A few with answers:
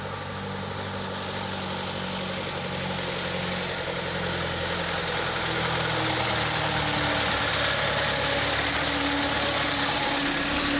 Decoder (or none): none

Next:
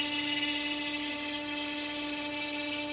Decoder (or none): none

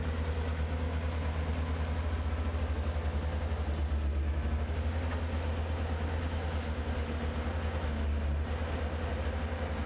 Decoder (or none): none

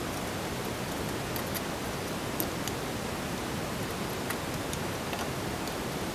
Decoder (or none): none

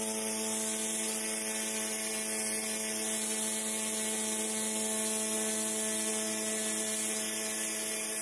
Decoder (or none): none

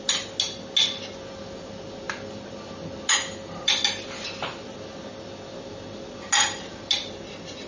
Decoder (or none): none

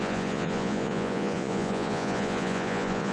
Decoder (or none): vocoder, Vocos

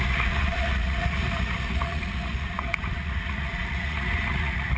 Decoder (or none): vocoder, Vocos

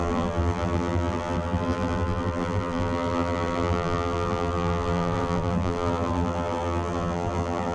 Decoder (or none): vocoder, BigVGAN v2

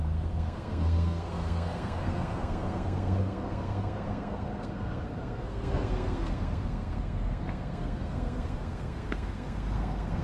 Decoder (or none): codec, SNAC